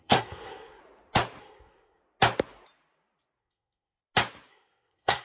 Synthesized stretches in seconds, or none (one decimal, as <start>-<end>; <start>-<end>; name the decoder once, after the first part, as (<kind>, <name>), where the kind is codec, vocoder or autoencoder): 0.0-0.8 (codec, SNAC); 1.4-2.0; 3.4-4.0; 4.5-5.2